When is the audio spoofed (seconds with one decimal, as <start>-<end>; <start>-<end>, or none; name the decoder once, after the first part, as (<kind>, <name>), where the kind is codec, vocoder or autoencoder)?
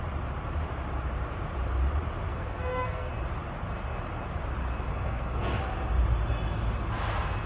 2.3-3.1 (codec, SNAC); 4.9-5.6